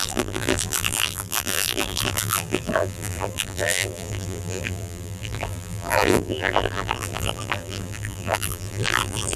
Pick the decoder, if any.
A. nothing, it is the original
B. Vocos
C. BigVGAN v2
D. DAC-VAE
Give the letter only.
C